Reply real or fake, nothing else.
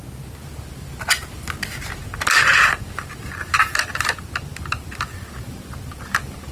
real